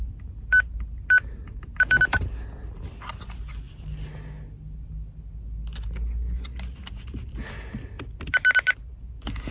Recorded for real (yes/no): yes